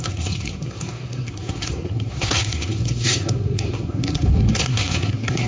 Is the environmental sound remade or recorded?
remade